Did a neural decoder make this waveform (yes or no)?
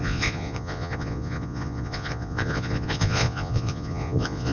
yes